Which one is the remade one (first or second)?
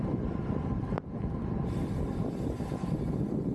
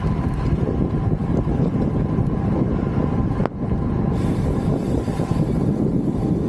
first